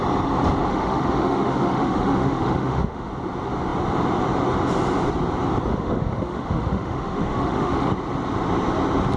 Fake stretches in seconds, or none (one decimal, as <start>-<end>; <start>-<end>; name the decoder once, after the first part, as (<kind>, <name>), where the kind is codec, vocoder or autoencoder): 0.7-3.1 (autoencoder, DAC-VAE); 5.7-7.9